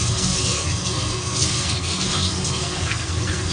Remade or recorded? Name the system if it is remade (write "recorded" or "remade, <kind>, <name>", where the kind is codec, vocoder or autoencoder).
remade, codec, SNAC